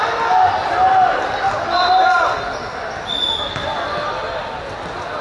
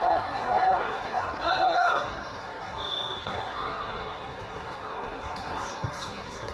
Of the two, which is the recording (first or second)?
first